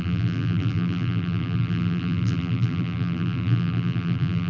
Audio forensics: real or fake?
fake